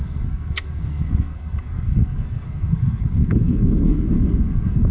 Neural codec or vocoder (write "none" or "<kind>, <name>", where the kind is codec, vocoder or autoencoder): codec, SNAC